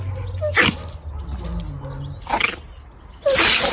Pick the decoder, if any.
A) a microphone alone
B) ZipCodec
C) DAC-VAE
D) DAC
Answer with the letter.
A